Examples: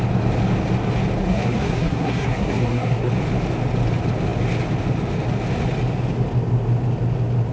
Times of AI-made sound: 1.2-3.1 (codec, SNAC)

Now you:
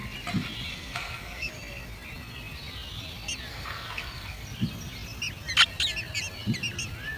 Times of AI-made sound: 0.7-1.5 (codec, SNAC); 3.5-4.4

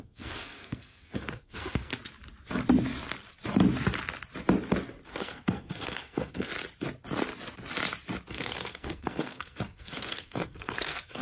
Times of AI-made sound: 0.0-1.9 (codec, SNAC); 5.1-6.5; 8.3-11.2

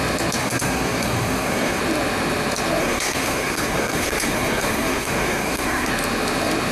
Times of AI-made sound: 0.4-1.8 (codec, SNAC); 2.8-5.9